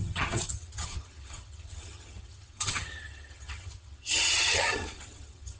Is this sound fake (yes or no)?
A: yes